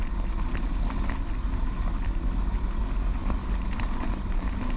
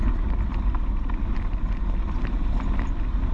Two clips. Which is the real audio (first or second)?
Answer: first